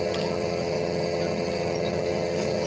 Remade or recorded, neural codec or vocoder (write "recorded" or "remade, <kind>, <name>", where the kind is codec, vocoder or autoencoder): remade, vocoder, HiFi-GAN